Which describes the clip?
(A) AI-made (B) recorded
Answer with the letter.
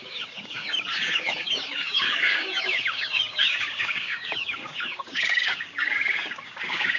A